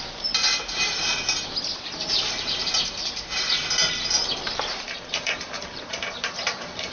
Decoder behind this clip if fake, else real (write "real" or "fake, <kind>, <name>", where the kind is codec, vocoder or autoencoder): fake, vocoder, BigVGAN v2